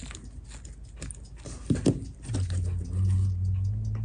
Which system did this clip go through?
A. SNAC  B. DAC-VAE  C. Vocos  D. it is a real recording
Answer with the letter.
D